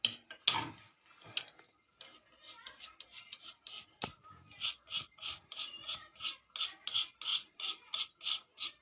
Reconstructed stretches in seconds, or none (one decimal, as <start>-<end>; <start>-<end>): 7.3-8.8